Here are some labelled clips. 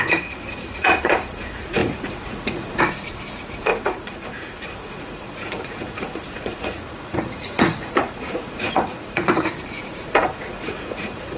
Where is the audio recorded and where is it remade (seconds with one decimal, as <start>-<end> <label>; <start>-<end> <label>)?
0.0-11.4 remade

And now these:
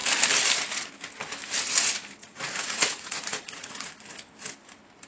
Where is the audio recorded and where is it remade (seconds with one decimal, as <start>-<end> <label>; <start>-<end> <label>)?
0.0-2.2 recorded; 2.2-3.9 remade; 3.9-5.1 recorded

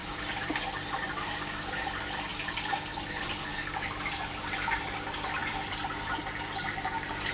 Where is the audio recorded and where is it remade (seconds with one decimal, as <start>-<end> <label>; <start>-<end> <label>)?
0.0-3.5 recorded; 3.5-4.0 remade; 4.0-7.3 recorded